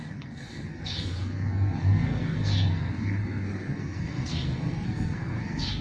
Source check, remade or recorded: remade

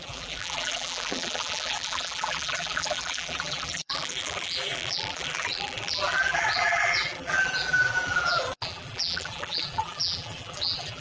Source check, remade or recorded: remade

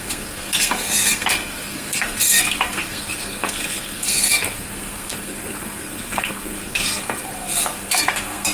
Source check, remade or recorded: remade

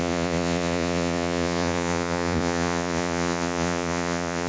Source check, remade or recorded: remade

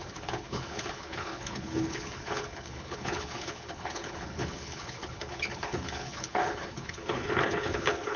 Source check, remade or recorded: remade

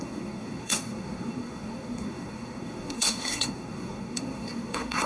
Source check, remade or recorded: remade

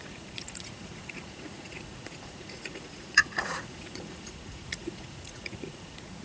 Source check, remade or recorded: remade